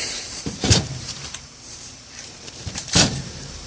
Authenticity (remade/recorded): remade